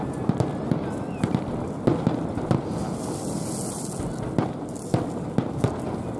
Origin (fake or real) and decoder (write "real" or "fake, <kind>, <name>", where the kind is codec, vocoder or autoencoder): real